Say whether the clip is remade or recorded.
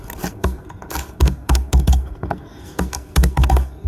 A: remade